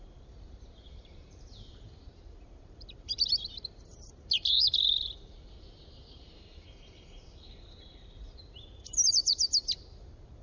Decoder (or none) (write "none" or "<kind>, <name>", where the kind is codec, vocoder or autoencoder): vocoder, BigVGAN v2